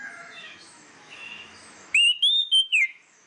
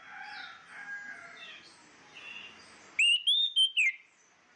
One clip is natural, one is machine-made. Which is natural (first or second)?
second